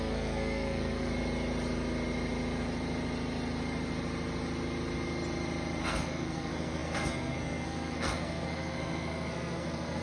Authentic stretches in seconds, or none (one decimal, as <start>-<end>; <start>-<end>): 1.1-5.8